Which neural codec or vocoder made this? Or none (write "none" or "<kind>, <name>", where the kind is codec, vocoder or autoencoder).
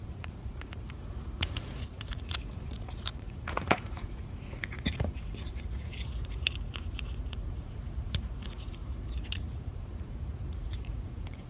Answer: vocoder, Vocos